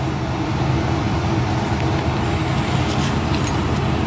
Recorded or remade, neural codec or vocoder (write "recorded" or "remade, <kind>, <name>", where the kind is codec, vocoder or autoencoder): recorded